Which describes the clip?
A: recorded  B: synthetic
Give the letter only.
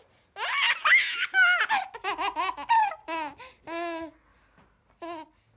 A